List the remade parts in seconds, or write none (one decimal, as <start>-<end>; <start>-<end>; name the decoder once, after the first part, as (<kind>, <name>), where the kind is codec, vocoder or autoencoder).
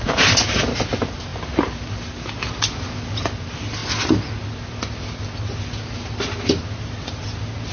none